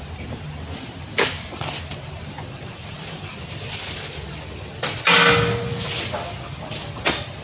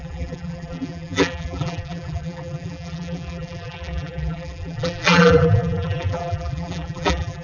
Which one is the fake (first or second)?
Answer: second